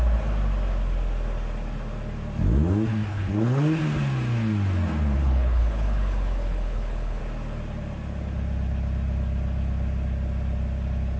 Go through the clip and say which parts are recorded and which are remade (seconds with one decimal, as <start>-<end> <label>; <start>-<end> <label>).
0.0-3.1 recorded; 3.1-3.8 remade; 3.8-5.2 recorded; 5.2-7.2 remade; 7.2-11.2 recorded